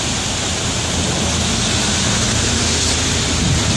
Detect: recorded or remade recorded